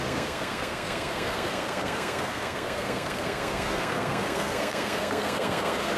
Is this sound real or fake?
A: fake